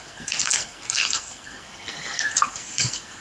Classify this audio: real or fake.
fake